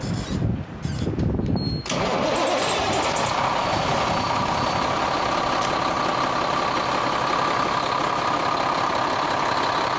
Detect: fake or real real